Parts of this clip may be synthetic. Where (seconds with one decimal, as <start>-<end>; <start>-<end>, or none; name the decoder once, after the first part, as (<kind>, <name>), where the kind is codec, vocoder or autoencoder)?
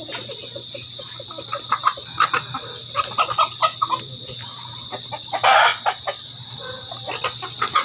none